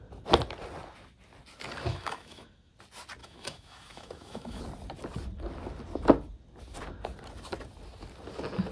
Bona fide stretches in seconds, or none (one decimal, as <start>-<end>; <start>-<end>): 0.0-1.9; 2.7-3.2; 4.6-8.7